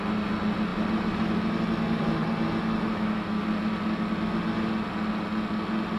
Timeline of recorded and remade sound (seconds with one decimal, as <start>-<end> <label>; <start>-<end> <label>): 0.0-2.9 recorded; 2.9-3.4 remade; 3.4-6.0 recorded